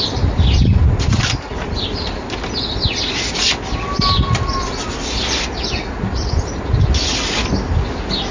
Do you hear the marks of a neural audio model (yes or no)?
no